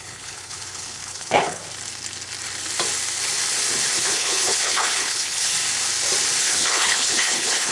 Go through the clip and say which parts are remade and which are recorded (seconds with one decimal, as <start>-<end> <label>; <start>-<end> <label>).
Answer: 0.0-1.6 remade; 1.6-3.9 recorded; 3.9-5.5 remade; 5.5-6.4 recorded; 6.4-7.7 remade

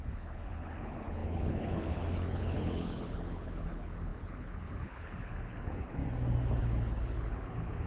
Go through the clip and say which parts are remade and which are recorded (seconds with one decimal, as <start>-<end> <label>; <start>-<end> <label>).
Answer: 0.0-6.0 remade; 6.0-6.6 recorded; 6.6-7.9 remade